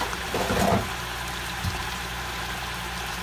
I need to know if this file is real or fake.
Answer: fake